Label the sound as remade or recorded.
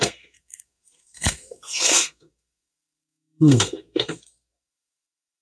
remade